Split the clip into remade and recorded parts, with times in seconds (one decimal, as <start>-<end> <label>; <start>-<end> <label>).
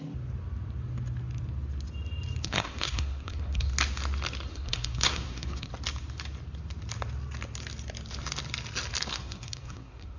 0.0-2.4 recorded; 2.4-3.7 remade; 3.7-4.5 recorded; 4.5-5.7 remade; 5.7-9.1 recorded; 9.1-10.2 remade